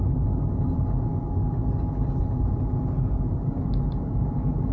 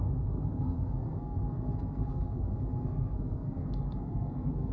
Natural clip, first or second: first